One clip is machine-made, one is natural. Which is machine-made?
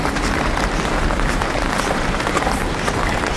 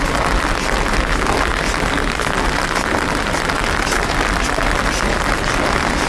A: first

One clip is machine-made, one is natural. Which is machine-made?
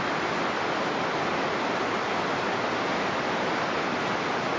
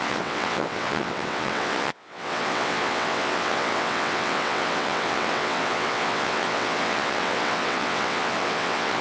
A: second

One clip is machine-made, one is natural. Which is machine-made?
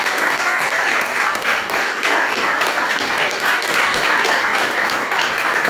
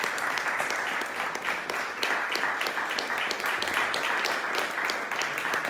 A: first